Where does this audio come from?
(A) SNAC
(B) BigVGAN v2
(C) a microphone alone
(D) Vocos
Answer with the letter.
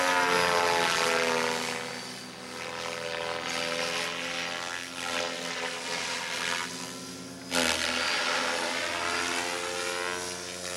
C